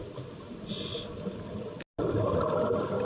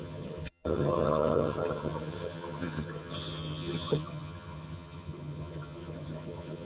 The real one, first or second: first